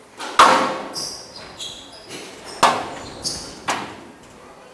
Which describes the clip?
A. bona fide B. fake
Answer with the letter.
A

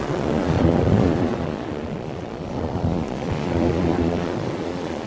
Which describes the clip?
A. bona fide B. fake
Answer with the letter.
B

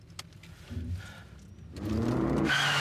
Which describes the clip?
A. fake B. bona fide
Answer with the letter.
B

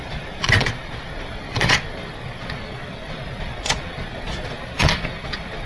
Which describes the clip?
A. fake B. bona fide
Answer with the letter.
A